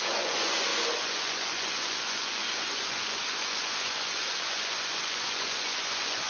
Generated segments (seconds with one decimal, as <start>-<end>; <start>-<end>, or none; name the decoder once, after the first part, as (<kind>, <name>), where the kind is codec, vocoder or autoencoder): 0.0-6.3 (vocoder, Vocos)